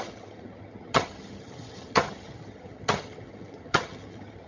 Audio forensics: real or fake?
fake